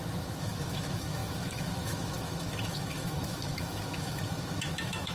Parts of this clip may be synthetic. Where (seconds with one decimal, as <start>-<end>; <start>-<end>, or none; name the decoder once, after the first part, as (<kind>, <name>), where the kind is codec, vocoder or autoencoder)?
0.0-5.1 (autoencoder, DAC-VAE)